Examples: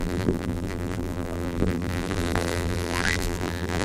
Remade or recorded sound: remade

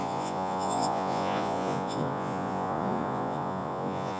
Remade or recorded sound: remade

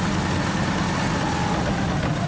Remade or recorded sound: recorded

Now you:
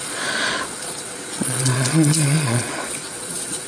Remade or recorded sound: remade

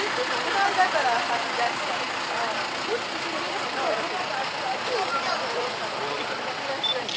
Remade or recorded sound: recorded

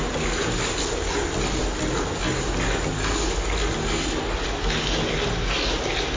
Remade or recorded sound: recorded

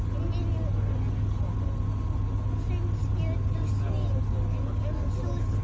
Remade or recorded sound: recorded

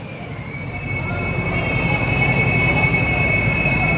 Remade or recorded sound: recorded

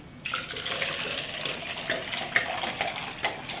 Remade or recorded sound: recorded